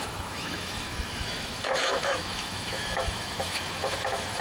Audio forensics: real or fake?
fake